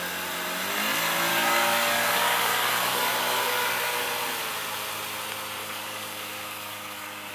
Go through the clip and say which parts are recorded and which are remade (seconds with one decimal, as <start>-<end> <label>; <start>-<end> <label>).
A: 0.0-1.3 recorded; 1.3-4.1 remade; 4.1-5.6 recorded; 5.6-7.3 remade